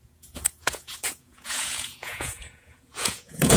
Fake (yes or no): yes